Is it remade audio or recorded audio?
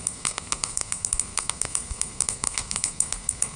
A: remade